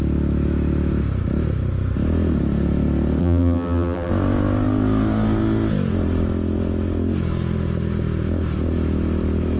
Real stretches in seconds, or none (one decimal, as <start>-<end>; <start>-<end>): 0.0-3.2; 4.1-9.6